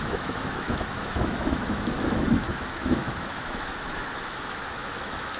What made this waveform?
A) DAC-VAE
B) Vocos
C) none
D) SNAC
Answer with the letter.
A